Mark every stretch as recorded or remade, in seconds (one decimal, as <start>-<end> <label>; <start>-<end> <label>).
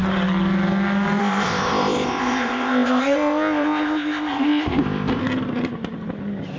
0.0-1.2 recorded; 1.2-5.2 remade; 5.2-6.6 recorded